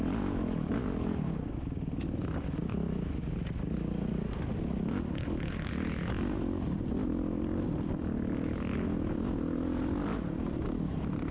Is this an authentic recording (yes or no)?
yes